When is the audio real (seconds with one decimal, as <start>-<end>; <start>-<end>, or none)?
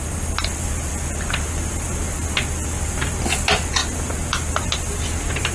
0.0-5.5